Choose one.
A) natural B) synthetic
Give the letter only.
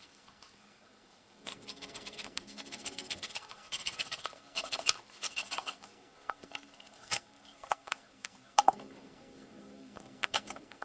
B